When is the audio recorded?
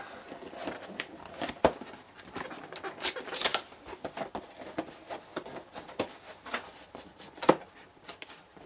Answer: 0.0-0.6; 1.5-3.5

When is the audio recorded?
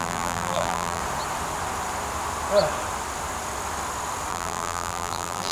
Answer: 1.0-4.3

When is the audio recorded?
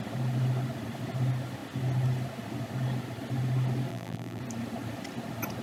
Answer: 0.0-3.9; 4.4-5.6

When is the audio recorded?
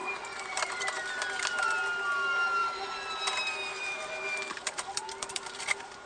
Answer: 1.2-2.6; 5.6-6.1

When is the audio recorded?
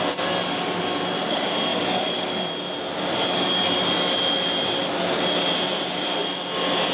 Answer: 0.0-6.9